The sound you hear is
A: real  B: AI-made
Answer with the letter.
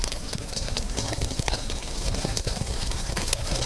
B